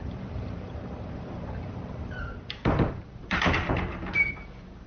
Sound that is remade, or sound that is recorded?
remade